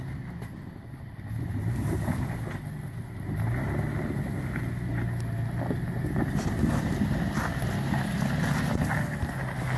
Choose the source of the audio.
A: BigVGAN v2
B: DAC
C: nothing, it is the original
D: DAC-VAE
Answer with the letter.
C